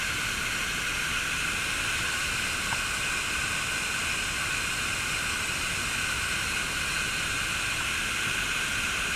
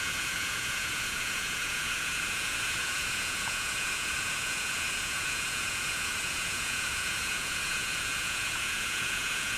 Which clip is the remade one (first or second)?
second